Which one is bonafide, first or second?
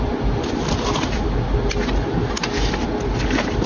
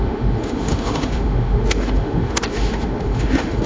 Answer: first